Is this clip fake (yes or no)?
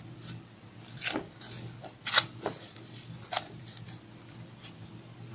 no